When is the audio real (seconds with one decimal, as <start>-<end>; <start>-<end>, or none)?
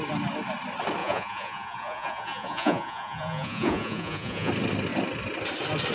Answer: 0.0-1.0; 4.5-5.9